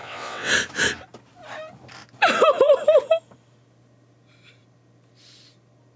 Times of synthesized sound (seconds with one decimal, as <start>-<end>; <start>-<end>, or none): 0.0-0.5